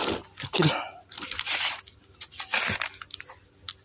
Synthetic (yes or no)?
no